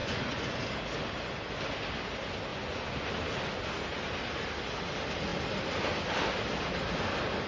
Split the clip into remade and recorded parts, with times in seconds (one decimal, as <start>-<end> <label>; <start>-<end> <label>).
0.0-0.6 remade; 0.6-2.5 recorded; 2.5-3.1 remade; 3.1-7.5 recorded